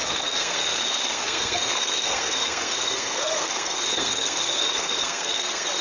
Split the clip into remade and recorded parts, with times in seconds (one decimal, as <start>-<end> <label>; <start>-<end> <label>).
0.0-5.8 remade